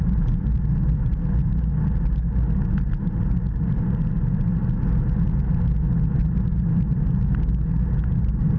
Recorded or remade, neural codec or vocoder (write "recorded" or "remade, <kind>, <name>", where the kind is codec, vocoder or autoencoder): recorded